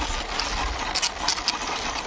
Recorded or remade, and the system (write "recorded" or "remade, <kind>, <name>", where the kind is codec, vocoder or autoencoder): recorded